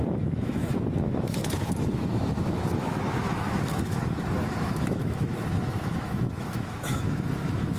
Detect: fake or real fake